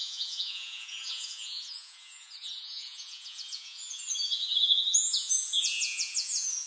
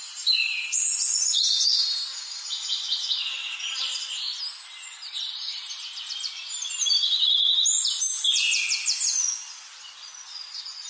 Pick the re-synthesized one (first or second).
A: first